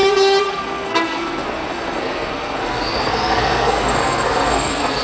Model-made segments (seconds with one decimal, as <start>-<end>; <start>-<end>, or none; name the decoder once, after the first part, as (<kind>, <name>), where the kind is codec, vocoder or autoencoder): 0.5-5.0 (codec, SNAC)